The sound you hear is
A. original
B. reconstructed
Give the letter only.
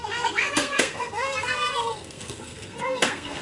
B